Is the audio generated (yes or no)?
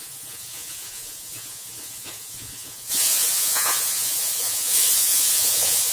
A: yes